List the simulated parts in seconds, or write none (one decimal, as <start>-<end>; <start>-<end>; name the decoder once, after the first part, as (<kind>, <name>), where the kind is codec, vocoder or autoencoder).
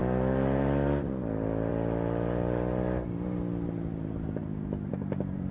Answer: none